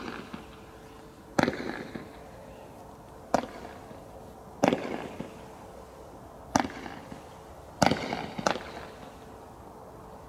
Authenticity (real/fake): real